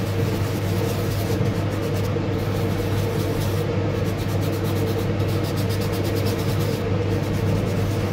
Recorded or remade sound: recorded